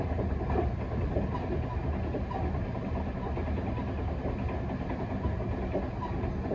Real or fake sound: real